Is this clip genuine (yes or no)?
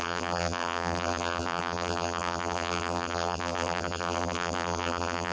no